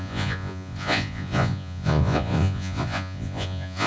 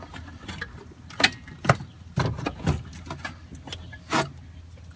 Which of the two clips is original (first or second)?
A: second